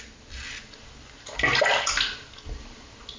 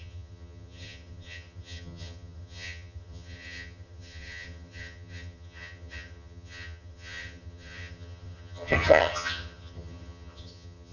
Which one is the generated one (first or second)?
second